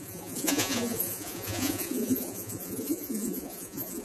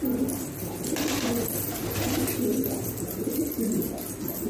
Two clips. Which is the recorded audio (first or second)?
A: second